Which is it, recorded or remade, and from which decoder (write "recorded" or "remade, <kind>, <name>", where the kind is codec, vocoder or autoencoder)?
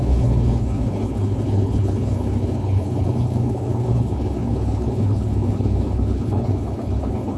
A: remade, codec, HILCodec